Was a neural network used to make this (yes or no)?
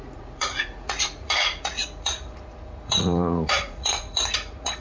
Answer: yes